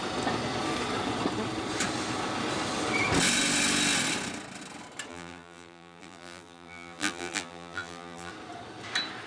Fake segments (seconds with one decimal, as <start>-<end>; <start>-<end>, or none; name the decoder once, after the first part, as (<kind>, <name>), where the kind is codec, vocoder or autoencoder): 5.1-8.3 (vocoder, BigVGAN v2)